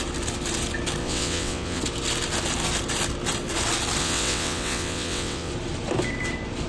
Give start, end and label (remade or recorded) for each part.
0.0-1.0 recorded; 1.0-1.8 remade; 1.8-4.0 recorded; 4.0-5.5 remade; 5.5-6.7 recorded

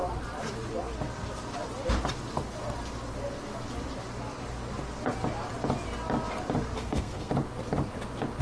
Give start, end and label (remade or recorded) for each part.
0.0-6.8 recorded; 6.8-7.3 remade; 7.3-8.4 recorded

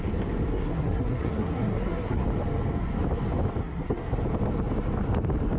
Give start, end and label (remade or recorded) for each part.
0.0-0.5 recorded; 0.5-2.2 remade; 2.2-3.6 recorded; 3.6-4.2 remade; 4.2-5.6 recorded

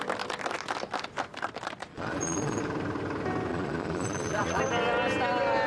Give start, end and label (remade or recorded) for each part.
0.0-1.9 recorded; 1.9-2.6 remade; 2.6-3.5 recorded; 3.5-4.6 remade; 4.6-5.7 recorded

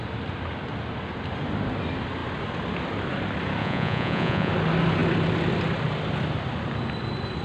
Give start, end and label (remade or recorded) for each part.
0.0-3.6 recorded; 3.6-4.5 remade; 4.5-7.4 recorded

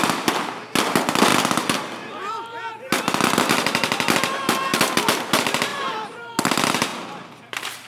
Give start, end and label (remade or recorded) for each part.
0.0-5.7 recorded; 5.7-6.3 remade; 6.3-7.9 recorded

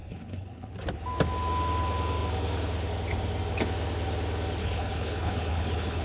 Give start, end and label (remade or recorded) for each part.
0.0-0.7 remade; 0.7-4.6 recorded; 4.6-6.0 remade

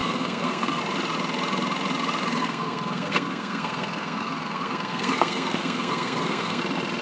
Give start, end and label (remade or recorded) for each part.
0.0-0.8 remade; 0.8-2.4 recorded; 2.4-6.6 remade; 6.6-7.0 recorded